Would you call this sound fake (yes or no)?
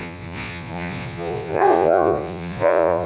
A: yes